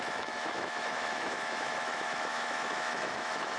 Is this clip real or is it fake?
fake